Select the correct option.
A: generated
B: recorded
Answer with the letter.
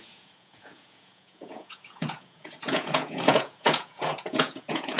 A